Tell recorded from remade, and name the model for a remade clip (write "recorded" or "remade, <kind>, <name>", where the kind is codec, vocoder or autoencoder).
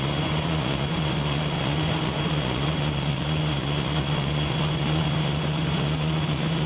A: remade, vocoder, Vocos